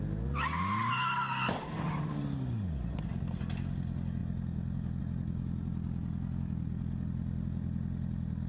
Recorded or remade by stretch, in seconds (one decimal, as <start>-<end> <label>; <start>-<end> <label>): 0.0-8.5 recorded